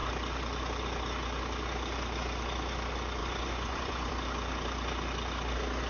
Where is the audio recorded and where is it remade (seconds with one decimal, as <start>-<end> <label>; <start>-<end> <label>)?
0.0-3.2 recorded; 3.2-4.1 remade; 4.1-5.9 recorded